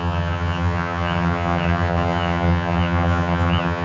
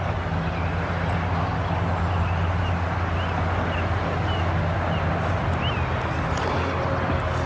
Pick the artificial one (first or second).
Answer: first